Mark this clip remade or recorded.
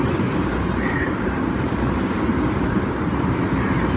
remade